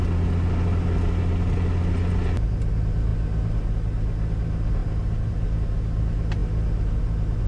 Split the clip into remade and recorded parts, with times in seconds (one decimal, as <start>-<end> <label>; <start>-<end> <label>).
0.0-7.5 recorded